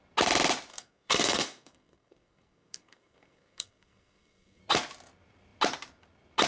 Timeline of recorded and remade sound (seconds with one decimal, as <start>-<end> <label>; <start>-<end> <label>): 0.0-0.7 recorded; 0.7-4.6 remade; 4.6-6.5 recorded